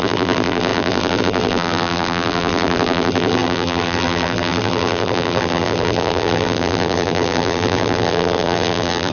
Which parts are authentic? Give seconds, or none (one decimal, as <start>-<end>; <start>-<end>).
none